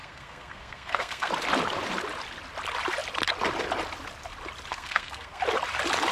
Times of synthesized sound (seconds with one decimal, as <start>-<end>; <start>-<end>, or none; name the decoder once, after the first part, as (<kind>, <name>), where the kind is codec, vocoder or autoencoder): 0.0-1.3 (codec, SNAC); 4.7-5.4